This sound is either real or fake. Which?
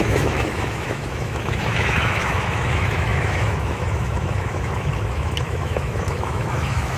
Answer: fake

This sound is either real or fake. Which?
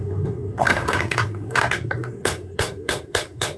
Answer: fake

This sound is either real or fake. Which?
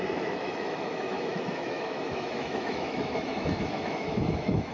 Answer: fake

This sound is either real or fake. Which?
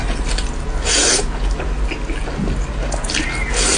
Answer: real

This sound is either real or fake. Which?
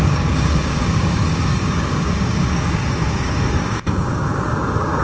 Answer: fake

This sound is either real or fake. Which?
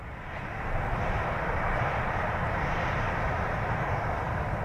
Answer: fake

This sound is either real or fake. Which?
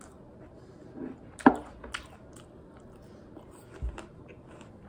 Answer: real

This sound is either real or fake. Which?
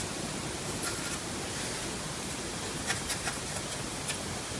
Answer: real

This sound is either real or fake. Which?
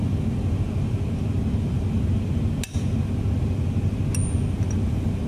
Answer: real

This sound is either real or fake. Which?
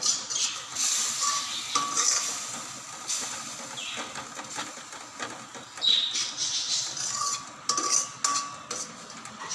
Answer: real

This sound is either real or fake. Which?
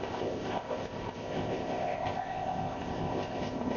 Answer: fake